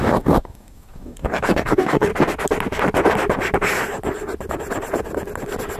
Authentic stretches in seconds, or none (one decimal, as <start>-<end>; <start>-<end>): 2.1-5.8